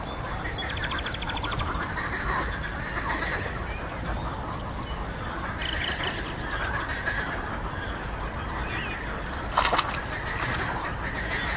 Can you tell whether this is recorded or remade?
recorded